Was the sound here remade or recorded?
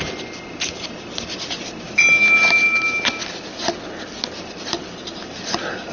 recorded